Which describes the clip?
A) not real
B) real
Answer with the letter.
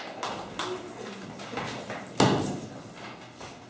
B